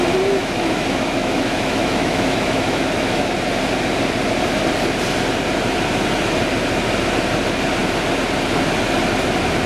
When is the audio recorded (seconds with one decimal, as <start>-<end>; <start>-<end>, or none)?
0.0-0.4; 3.3-9.7